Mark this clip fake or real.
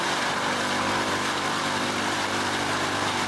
fake